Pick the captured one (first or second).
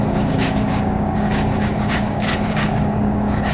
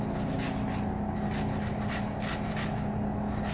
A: second